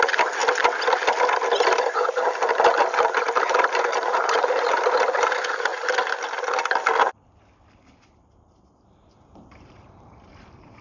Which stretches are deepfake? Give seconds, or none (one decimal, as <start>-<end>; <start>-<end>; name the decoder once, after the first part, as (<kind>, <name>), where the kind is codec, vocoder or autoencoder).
0.0-0.4 (vocoder, BigVGAN v2); 3.0-5.7; 8.3-10.8